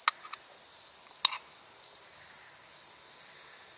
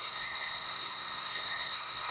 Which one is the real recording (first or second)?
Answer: first